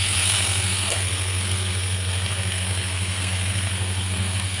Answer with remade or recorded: remade